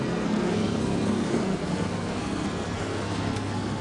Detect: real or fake fake